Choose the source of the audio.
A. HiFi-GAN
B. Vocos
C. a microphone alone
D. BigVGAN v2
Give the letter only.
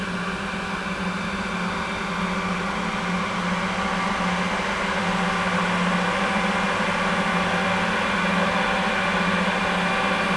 C